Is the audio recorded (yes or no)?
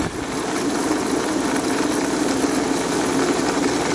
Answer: yes